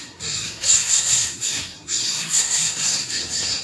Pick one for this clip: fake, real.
fake